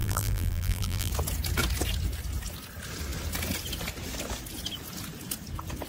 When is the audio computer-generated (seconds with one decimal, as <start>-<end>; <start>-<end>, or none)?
0.0-1.1

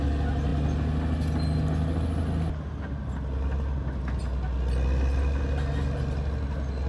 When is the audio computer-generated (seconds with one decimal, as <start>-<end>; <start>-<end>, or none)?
none

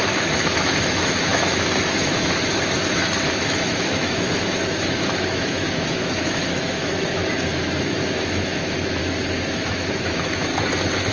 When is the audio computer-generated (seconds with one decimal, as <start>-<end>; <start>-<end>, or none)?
0.0-9.0; 9.5-10.5

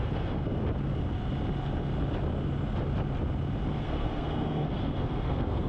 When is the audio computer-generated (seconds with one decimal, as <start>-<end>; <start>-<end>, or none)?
0.0-0.4; 3.8-5.7

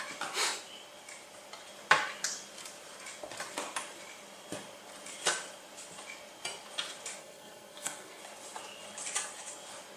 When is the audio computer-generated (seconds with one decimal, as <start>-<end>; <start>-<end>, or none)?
7.2-8.2

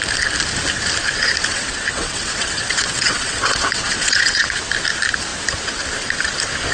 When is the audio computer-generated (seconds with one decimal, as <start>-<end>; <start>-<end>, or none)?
1.5-4.6

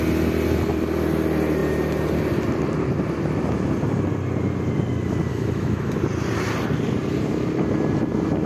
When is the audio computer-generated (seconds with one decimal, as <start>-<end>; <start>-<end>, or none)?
5.3-5.9